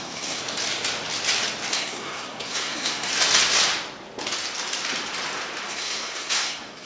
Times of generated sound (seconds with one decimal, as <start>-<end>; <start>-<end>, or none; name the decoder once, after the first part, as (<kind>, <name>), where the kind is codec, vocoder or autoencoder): 0.0-0.4 (codec, SNAC); 1.7-3.1; 5.7-6.9